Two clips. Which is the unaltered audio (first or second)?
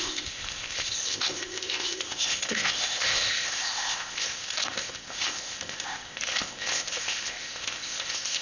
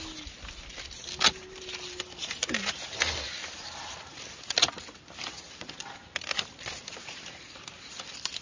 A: second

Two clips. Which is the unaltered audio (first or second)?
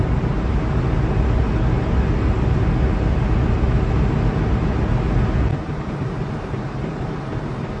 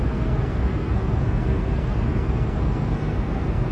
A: first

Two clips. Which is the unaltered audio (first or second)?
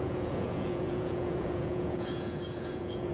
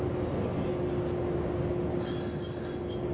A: second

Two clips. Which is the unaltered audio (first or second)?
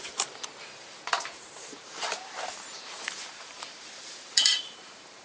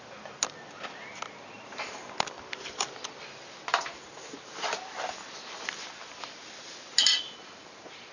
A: second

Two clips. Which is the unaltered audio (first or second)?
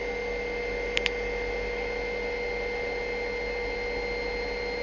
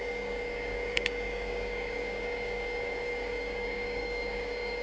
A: first